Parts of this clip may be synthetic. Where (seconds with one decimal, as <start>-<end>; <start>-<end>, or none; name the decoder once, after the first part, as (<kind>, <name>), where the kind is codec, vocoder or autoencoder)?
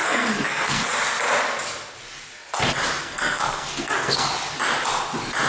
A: 0.0-0.9 (codec, SNAC); 3.0-4.3